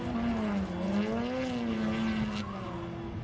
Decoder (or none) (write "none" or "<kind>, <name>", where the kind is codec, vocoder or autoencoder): none